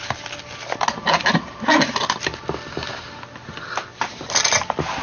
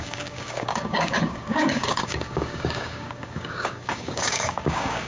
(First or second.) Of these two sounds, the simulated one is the second